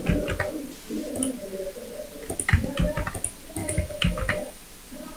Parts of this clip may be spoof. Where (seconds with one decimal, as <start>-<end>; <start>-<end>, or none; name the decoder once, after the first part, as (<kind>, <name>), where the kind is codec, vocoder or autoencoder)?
3.6-4.6 (autoencoder, DAC-VAE)